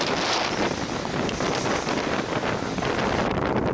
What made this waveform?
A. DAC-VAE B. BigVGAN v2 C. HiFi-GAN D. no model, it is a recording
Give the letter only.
D